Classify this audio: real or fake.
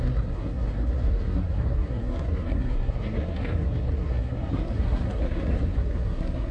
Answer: fake